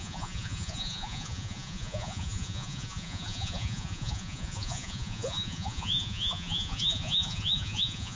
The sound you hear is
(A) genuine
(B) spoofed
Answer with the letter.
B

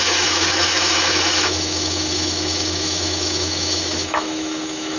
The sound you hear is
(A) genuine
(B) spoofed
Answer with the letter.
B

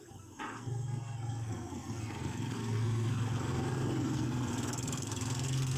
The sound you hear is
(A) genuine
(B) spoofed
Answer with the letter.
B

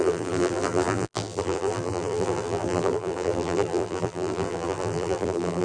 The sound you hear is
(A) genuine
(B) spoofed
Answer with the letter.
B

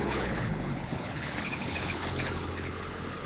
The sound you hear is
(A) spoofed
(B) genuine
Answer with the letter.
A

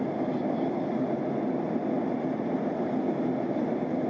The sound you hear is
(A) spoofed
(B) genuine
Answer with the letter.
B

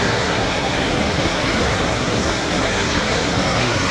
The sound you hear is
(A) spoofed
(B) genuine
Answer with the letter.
A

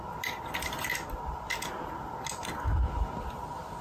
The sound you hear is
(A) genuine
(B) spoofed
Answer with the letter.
A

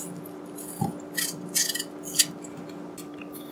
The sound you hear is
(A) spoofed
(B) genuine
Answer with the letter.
B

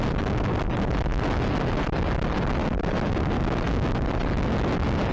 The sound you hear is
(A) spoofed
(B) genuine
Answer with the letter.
B